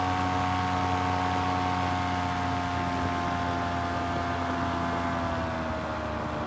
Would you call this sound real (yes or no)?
yes